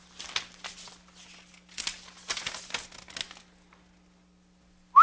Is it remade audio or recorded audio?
recorded